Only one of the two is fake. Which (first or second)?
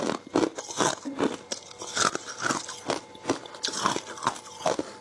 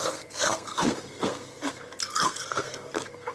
second